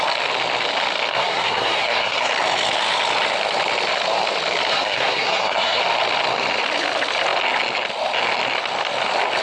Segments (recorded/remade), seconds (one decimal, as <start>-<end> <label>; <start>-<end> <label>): 0.0-1.1 recorded; 1.1-2.3 remade; 2.3-4.7 recorded; 4.7-5.8 remade; 5.8-9.4 recorded